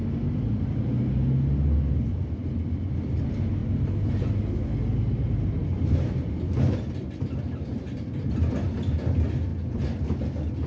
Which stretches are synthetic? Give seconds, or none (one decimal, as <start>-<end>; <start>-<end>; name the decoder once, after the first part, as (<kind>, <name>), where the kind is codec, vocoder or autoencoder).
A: 5.6-8.2 (vocoder, BigVGAN v2); 9.5-10.1